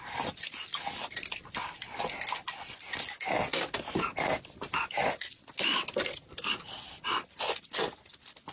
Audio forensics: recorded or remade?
recorded